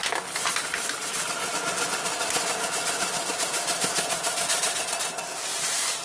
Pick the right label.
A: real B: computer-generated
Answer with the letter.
A